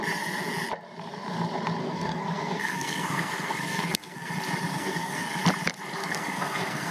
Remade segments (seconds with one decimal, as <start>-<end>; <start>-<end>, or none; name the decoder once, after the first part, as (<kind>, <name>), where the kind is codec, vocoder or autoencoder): 1.8-4.3 (codec, SNAC); 4.7-5.4; 6.0-6.9